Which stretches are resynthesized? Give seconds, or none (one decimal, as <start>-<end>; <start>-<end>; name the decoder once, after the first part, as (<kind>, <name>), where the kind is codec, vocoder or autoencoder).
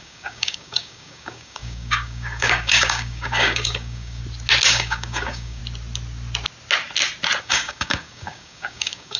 0.0-4.2 (codec, DAC); 4.7-5.6; 7.4-9.2